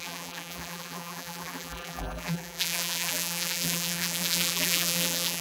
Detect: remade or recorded remade